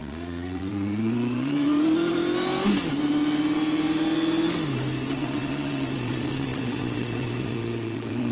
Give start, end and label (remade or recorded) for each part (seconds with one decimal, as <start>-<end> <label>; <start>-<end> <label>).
0.0-1.7 remade; 1.7-5.1 recorded; 5.1-8.3 remade